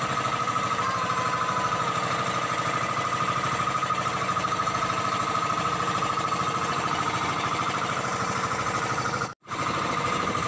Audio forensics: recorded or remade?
remade